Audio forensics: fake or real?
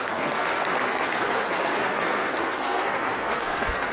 fake